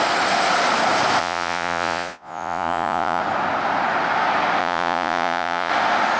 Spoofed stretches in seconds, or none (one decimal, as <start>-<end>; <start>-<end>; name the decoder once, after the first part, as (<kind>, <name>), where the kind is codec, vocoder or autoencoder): 1.2-3.2 (vocoder, Vocos); 4.6-5.7